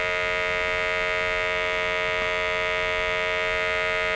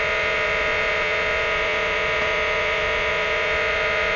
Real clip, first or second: first